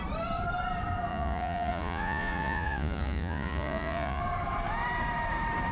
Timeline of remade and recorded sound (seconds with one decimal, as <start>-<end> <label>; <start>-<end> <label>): 0.0-1.1 recorded; 1.1-4.2 remade; 4.2-5.7 recorded